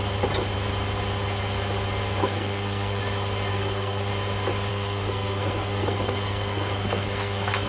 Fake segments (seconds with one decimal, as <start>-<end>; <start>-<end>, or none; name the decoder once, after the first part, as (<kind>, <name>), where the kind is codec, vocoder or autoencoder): 2.2-3.0 (codec, SNAC); 3.5-4.1; 4.7-7.7

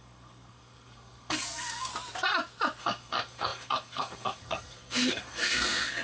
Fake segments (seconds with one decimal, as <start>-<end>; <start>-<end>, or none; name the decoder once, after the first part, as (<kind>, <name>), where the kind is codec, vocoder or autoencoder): 0.0-1.9 (codec, SNAC); 2.8-6.0

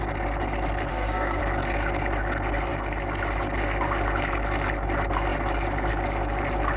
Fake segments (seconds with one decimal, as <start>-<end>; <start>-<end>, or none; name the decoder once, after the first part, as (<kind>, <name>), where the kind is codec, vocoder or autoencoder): 0.9-1.4 (codec, SNAC)

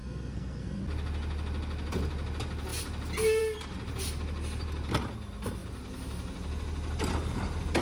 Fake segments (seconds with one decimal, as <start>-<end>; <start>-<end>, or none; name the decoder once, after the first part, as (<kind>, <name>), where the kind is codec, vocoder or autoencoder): 0.0-0.8 (codec, SNAC)

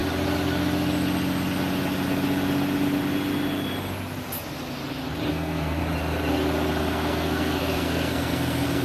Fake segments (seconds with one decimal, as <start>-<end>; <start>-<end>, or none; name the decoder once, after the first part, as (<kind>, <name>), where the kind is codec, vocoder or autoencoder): 5.3-5.8 (codec, SNAC); 6.8-8.8

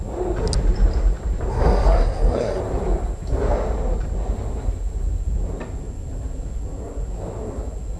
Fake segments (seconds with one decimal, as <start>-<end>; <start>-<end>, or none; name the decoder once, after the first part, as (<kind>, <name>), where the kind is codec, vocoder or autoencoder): 1.5-2.6 (codec, SNAC)